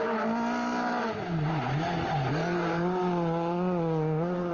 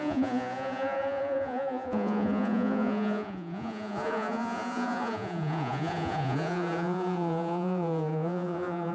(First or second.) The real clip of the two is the first